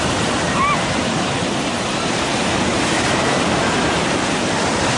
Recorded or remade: remade